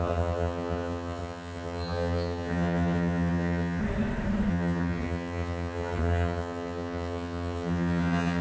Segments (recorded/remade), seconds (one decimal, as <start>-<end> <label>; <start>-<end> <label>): 0.0-3.8 remade; 3.8-4.5 recorded; 4.5-8.4 remade